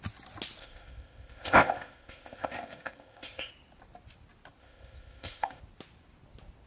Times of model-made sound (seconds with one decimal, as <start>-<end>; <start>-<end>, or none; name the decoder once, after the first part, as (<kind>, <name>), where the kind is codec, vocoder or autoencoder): 0.6-3.5 (codec, ZipCodec); 4.6-5.6